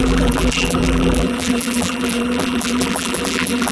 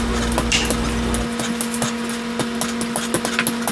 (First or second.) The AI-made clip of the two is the first